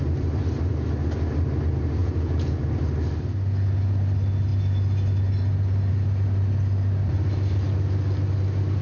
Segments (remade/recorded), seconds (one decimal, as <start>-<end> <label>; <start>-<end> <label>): 0.0-2.0 recorded; 2.0-2.6 remade; 2.6-8.8 recorded

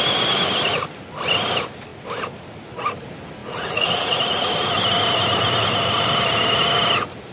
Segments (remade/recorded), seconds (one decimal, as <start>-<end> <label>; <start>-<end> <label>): 0.0-3.4 recorded; 3.4-4.2 remade; 4.2-7.3 recorded